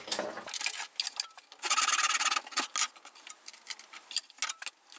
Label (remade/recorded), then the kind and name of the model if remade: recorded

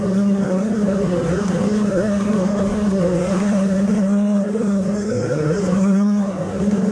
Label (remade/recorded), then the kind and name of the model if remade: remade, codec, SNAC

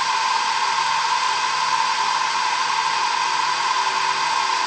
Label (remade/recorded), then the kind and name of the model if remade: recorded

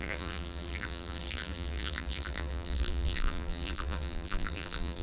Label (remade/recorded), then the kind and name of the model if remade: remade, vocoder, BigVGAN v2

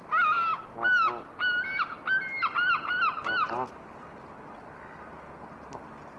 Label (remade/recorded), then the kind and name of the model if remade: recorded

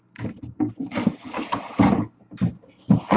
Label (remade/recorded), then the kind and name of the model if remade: recorded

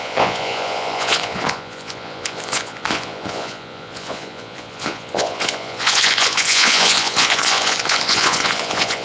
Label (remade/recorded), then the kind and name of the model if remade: remade, vocoder, Vocos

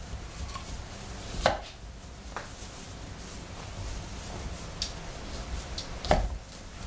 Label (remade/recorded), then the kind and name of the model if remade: recorded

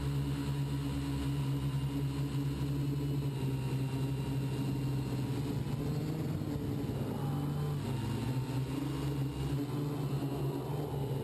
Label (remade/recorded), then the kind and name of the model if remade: recorded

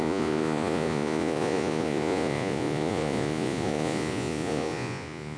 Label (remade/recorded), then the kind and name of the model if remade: remade, vocoder, Vocos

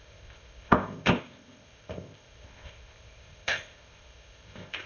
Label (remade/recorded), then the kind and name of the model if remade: remade, codec, ZipCodec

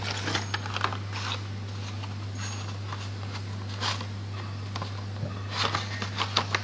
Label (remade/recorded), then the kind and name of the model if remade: recorded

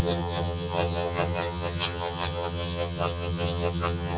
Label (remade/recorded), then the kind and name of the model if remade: remade, vocoder, HiFi-GAN